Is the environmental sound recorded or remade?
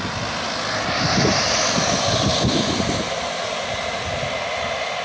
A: recorded